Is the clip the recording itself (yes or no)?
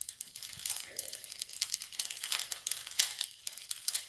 no